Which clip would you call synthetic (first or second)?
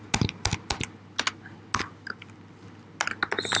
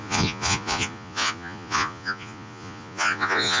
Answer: second